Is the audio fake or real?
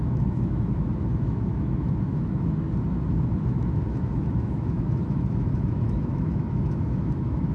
fake